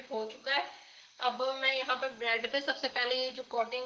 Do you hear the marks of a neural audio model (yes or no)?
yes